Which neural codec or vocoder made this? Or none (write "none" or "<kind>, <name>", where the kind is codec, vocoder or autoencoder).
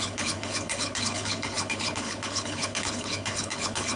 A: codec, HILCodec